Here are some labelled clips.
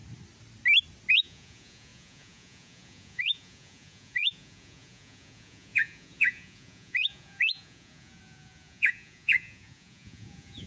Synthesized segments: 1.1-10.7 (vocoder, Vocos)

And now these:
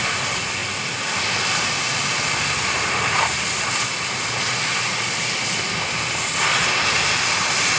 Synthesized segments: none

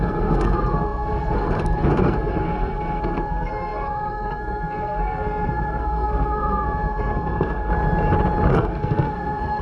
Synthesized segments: 0.0-7.7 (codec, SNAC); 8.5-9.6

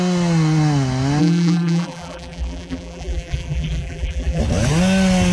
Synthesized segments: 1.2-4.4 (vocoder, BigVGAN v2)